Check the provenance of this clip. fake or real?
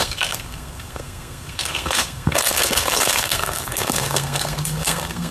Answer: fake